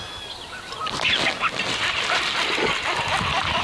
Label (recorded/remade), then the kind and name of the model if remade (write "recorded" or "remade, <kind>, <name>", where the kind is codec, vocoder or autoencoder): recorded